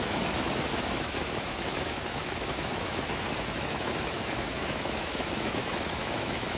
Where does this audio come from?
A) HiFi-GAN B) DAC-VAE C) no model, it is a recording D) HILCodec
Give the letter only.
B